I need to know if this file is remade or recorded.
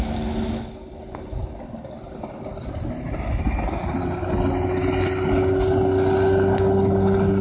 recorded